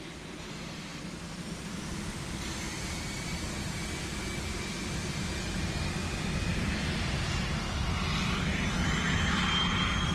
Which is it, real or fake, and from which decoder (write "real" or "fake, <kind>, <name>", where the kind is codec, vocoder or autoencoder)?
real